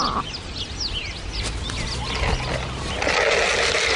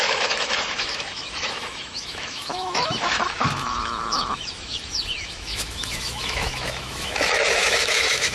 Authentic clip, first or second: first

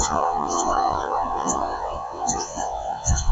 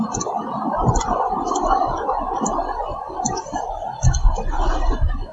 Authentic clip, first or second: second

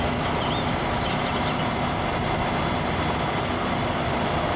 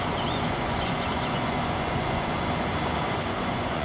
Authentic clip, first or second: first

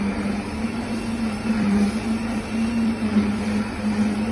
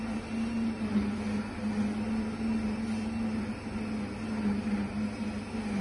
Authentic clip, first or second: second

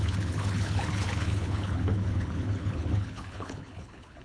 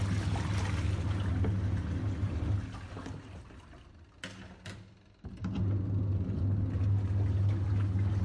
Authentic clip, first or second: second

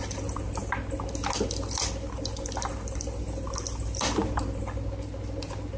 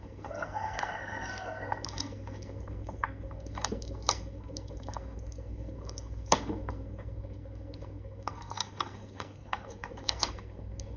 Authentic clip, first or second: first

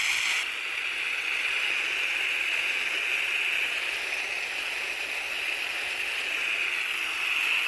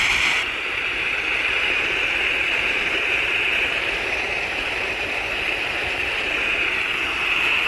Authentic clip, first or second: first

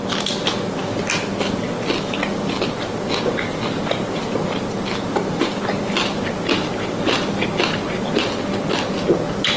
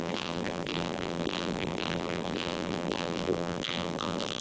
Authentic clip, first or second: first